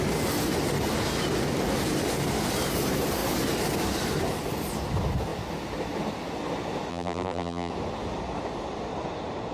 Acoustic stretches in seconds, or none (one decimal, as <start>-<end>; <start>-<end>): 0.0-6.9; 7.7-9.5